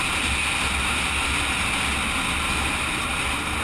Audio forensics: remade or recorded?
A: recorded